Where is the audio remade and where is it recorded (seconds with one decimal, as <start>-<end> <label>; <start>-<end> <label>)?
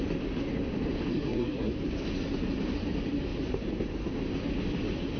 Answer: 0.0-1.1 recorded; 1.1-1.7 remade; 1.7-5.2 recorded